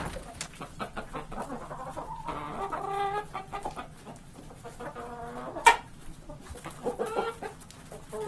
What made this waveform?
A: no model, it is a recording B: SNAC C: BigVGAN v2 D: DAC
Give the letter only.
A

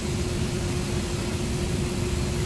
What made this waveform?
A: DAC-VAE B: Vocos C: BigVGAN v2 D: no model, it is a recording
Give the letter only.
D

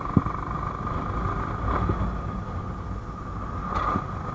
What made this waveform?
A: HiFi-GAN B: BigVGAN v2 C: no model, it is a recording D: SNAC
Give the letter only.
C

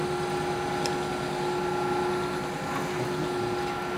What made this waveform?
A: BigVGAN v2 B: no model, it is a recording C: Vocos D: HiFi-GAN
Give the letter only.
B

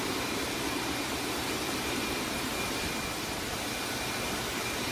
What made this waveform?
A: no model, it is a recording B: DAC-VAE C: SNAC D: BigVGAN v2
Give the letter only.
D